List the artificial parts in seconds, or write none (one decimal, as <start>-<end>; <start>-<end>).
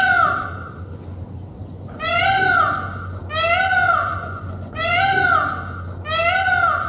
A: 1.6-3.2; 3.8-5.0